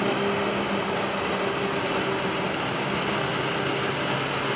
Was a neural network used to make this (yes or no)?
no